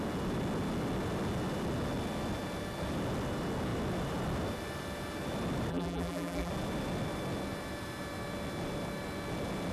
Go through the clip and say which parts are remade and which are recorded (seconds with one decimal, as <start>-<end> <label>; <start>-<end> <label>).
0.0-5.7 recorded; 5.7-6.5 remade; 6.5-9.7 recorded